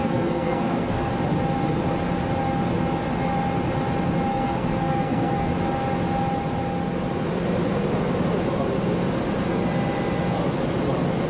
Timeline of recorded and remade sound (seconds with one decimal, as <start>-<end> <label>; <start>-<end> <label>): 0.0-1.1 remade; 1.1-4.3 recorded; 4.3-5.5 remade; 5.5-11.3 recorded